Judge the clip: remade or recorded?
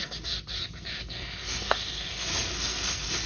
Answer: remade